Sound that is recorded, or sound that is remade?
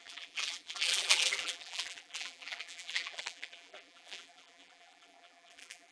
remade